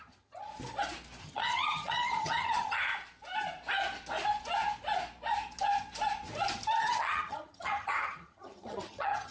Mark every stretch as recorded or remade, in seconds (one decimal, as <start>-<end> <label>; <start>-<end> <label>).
0.0-0.5 remade; 0.5-1.2 recorded; 1.2-2.9 remade; 2.9-6.8 recorded; 6.8-9.3 remade